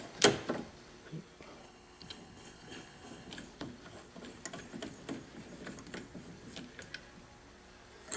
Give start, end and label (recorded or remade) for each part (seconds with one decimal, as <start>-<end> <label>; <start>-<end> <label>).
0.0-1.6 recorded; 1.6-3.3 remade; 3.3-8.2 recorded